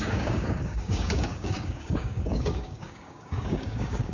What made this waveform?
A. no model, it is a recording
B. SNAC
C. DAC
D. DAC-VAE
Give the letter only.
C